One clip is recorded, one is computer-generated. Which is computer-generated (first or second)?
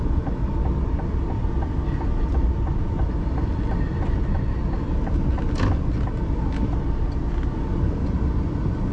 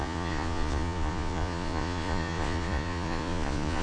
second